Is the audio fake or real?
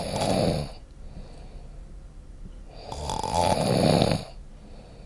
real